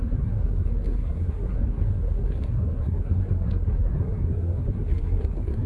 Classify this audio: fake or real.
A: fake